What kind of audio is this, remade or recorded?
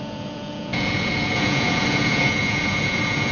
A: remade